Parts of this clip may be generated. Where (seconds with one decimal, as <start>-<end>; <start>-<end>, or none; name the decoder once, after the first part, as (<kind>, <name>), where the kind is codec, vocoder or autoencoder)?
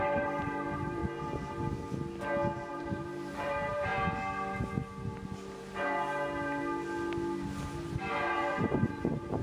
0.0-1.0 (vocoder, BigVGAN v2); 2.7-3.9; 8.1-9.4